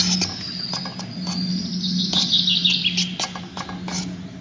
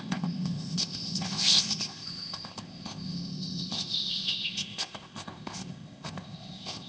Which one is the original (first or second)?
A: first